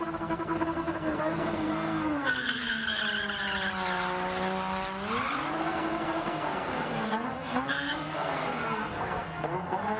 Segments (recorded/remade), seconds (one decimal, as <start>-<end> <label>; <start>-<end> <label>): 0.0-3.0 remade; 3.0-5.6 recorded; 5.6-10.0 remade

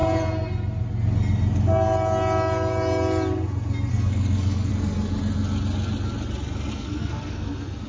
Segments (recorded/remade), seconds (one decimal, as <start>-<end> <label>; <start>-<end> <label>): 0.0-3.9 recorded; 3.9-4.7 remade; 4.7-6.7 recorded; 6.7-7.9 remade